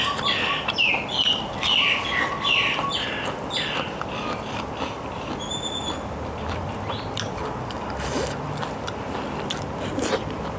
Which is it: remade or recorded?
recorded